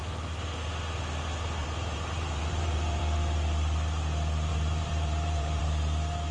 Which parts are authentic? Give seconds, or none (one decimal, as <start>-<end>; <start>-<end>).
0.0-1.6; 3.0-4.5; 5.6-6.3